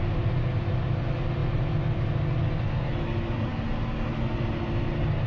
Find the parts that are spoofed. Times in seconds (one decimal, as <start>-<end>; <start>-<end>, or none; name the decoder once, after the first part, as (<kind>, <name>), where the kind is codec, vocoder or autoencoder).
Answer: none